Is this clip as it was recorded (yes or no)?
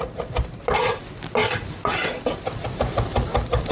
yes